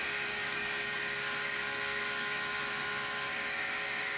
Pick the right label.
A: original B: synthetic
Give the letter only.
B